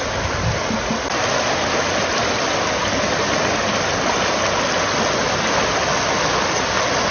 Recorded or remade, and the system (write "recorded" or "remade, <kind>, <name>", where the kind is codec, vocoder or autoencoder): recorded